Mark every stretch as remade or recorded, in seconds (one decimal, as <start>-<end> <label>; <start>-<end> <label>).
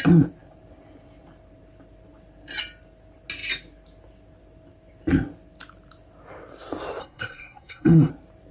0.0-7.0 recorded; 7.0-8.1 remade; 8.1-8.5 recorded